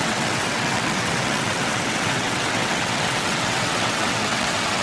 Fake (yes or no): yes